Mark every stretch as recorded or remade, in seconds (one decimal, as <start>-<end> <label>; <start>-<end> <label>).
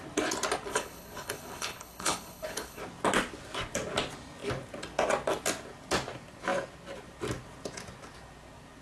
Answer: 0.0-0.7 recorded; 0.7-2.8 remade; 2.8-8.8 recorded